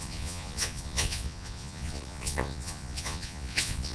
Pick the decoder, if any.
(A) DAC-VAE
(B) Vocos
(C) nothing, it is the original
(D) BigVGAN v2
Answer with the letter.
B